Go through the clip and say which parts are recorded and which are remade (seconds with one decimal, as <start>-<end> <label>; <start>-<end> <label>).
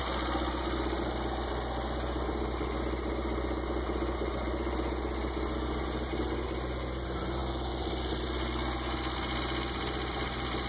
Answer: 0.0-10.7 recorded